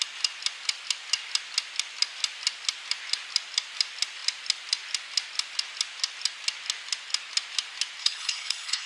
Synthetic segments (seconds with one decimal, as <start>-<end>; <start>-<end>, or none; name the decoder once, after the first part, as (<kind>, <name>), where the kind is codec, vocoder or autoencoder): 8.0-8.9 (codec, HILCodec)